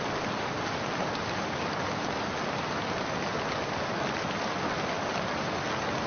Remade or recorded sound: recorded